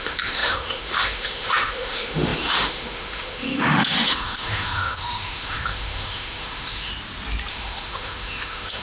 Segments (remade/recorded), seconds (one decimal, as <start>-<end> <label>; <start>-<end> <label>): 0.0-6.9 remade; 6.9-7.5 recorded; 7.5-8.8 remade